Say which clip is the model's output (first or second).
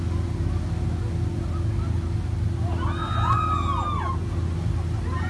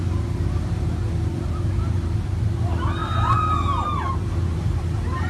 second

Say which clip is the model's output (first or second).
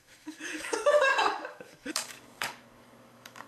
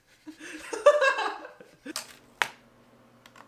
first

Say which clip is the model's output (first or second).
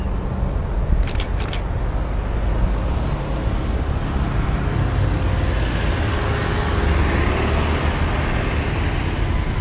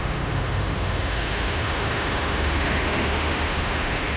second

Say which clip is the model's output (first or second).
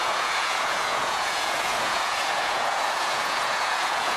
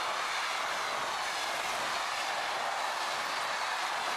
first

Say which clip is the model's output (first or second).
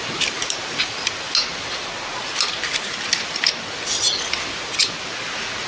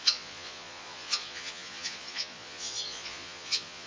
second